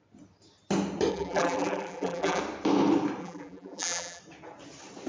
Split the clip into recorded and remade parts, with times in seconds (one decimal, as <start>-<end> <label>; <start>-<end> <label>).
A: 0.0-1.1 recorded; 1.1-2.4 remade; 2.4-3.2 recorded; 3.2-4.2 remade; 4.2-5.1 recorded